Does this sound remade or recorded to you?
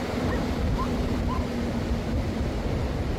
recorded